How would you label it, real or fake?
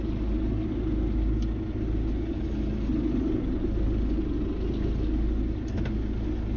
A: real